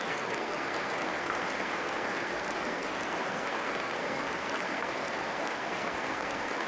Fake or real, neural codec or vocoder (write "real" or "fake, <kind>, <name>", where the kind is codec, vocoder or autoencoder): fake, codec, SNAC